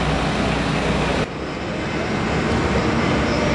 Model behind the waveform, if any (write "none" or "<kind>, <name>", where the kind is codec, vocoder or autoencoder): none